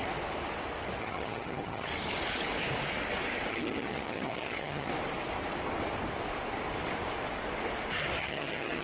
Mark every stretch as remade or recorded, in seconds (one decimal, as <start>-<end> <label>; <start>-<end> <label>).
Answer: 0.0-1.0 recorded; 1.0-1.9 remade; 1.9-3.5 recorded; 3.5-4.9 remade; 4.9-8.2 recorded; 8.2-8.8 remade